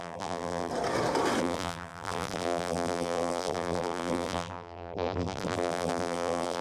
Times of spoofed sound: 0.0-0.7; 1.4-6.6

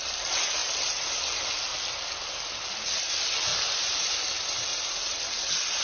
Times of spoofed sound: 3.5-4.2; 4.7-5.2

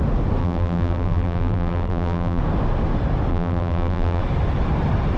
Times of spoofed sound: 0.4-2.4; 3.3-4.2